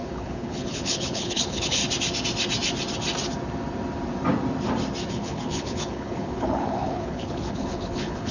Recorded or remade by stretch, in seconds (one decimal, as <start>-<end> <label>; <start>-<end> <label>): 0.0-1.8 remade; 1.8-5.1 recorded; 5.1-8.3 remade